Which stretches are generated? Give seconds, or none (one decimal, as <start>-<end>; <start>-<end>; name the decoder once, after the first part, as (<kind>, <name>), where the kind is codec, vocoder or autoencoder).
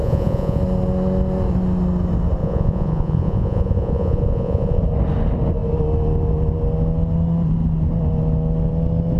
0.0-0.6 (vocoder, Vocos); 2.4-4.8